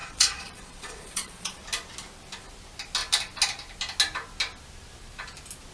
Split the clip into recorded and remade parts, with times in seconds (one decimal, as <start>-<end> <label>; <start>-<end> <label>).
0.0-1.6 remade; 1.6-5.7 recorded

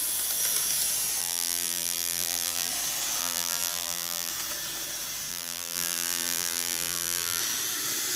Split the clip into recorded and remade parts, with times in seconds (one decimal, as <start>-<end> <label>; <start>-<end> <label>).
0.0-1.2 recorded; 1.2-2.7 remade; 2.7-3.2 recorded; 3.2-4.3 remade; 4.3-5.3 recorded; 5.3-7.4 remade; 7.4-8.2 recorded

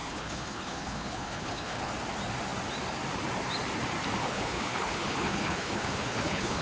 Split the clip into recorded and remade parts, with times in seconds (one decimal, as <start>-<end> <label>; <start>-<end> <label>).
0.0-1.9 remade; 1.9-4.2 recorded; 4.2-6.6 remade